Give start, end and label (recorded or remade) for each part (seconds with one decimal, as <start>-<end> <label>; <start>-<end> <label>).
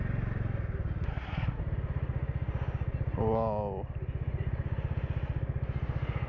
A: 0.0-1.1 recorded; 1.1-1.6 remade; 1.6-6.3 recorded